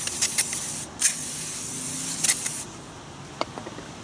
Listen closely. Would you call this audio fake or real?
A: real